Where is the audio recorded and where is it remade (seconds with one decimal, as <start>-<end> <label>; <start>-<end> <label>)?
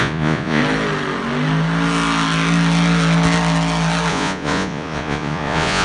0.0-0.6 remade; 0.6-4.1 recorded; 4.1-5.8 remade